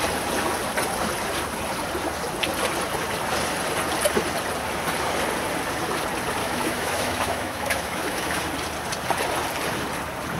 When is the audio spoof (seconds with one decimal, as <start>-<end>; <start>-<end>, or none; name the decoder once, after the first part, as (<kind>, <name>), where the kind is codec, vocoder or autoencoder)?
6.4-8.4 (autoencoder, DAC-VAE)